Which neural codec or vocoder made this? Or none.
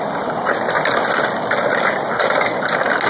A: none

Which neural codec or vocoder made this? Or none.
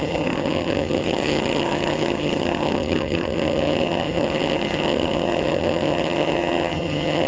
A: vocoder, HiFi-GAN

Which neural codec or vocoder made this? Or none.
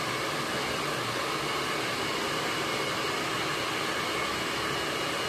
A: none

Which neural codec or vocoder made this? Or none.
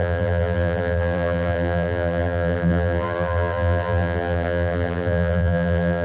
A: vocoder, BigVGAN v2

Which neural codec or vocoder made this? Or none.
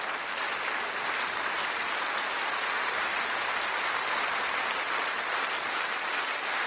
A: none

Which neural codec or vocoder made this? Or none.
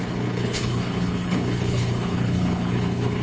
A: codec, HILCodec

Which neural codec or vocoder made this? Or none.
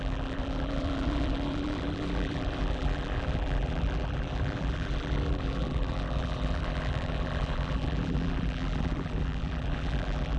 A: vocoder, BigVGAN v2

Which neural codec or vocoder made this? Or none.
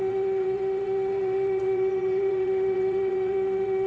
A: vocoder, WaveNeXt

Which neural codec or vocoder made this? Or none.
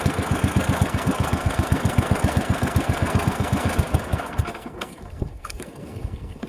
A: codec, SNAC